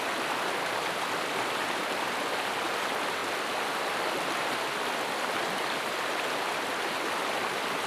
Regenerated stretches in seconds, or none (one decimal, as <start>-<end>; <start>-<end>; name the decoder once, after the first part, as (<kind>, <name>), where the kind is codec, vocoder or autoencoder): none